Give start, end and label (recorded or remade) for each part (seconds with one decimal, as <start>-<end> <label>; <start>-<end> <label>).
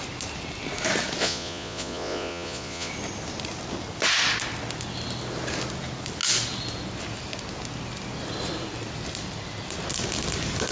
0.0-1.2 recorded; 1.2-2.9 remade; 2.9-10.7 recorded